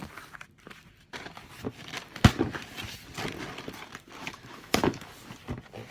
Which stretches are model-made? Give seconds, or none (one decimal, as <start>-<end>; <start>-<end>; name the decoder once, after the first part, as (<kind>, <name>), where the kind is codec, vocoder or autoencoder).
4.2-5.1 (autoencoder, DAC-VAE)